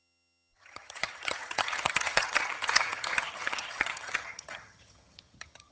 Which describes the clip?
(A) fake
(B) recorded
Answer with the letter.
A